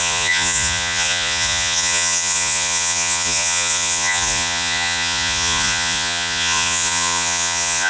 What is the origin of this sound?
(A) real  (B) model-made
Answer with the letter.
B